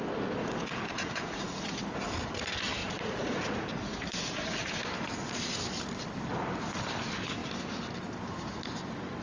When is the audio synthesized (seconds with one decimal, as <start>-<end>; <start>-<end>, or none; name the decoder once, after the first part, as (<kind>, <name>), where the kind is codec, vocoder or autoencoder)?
0.4-2.1 (vocoder, Vocos); 2.8-4.8